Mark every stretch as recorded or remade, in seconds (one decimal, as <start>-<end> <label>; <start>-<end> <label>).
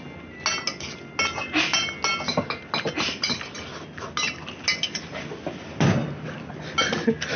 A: 0.0-7.4 recorded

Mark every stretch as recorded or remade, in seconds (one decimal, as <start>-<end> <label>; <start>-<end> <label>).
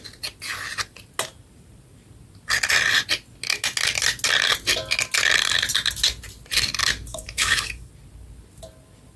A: 0.0-7.1 recorded; 7.1-7.9 remade; 7.9-9.2 recorded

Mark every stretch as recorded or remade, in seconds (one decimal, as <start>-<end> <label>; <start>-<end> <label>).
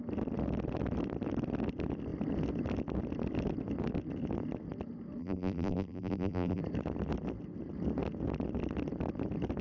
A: 0.0-5.2 recorded; 5.2-6.6 remade; 6.6-9.6 recorded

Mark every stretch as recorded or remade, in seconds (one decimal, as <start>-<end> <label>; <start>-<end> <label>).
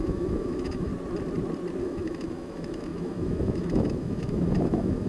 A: 0.0-0.9 remade; 0.9-1.8 recorded; 1.8-5.1 remade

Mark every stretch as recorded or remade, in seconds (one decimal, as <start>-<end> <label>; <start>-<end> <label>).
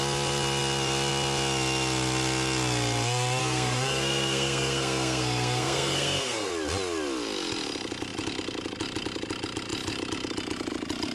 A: 0.0-3.4 recorded; 3.4-6.5 remade; 6.5-11.1 recorded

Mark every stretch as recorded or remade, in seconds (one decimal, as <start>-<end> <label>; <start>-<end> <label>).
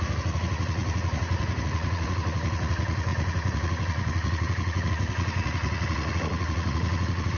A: 0.0-7.4 remade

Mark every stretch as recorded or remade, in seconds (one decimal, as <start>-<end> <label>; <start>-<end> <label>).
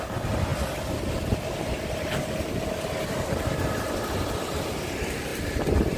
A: 0.0-6.0 recorded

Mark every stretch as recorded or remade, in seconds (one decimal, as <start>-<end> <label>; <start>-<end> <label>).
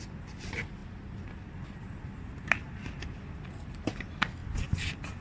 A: 0.0-5.2 recorded